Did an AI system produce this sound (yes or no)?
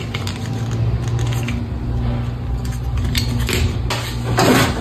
no